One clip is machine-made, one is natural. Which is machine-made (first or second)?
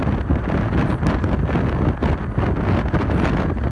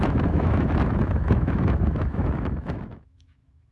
second